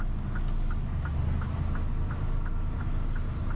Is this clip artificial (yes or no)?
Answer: no